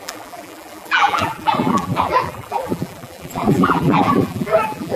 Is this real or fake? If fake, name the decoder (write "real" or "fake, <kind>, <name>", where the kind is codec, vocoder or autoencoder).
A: fake, vocoder, BigVGAN v2